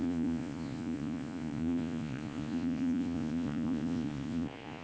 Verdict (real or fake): fake